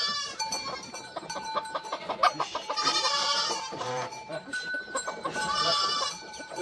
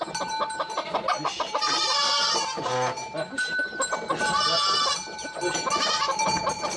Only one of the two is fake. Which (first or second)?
first